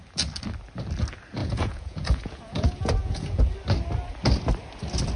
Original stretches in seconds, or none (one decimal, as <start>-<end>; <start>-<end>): 0.0-1.4; 3.4-5.2